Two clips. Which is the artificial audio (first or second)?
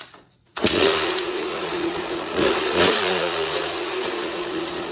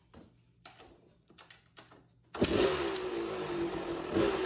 first